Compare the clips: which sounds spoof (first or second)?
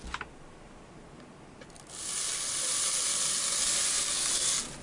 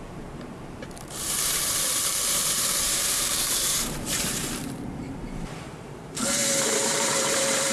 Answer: second